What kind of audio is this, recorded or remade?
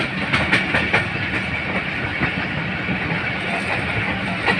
recorded